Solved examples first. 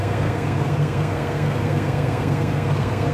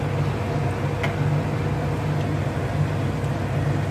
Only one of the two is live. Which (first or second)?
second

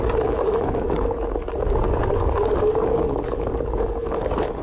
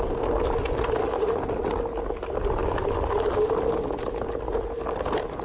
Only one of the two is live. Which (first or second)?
second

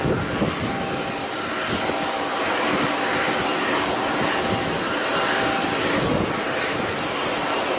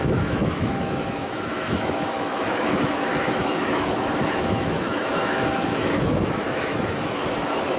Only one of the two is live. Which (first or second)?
first